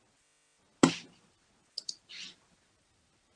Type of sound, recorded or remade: recorded